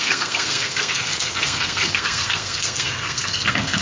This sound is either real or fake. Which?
fake